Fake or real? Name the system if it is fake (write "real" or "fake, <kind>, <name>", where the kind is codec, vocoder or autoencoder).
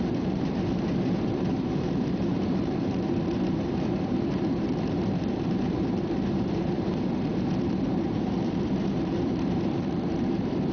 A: fake, vocoder, BigVGAN v2